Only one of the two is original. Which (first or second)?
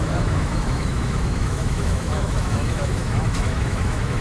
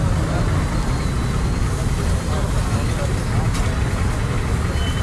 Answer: second